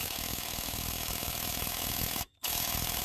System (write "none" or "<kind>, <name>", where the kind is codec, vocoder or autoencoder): autoencoder, DAC-VAE